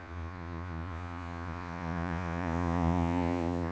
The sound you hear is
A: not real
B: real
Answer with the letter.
A